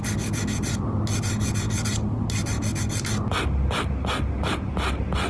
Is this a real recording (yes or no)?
yes